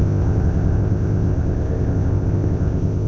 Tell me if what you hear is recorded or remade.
remade